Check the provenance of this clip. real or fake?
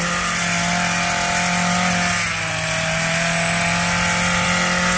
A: real